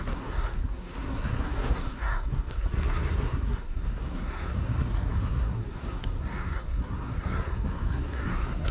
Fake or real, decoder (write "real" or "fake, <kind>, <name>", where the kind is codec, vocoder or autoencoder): fake, codec, SNAC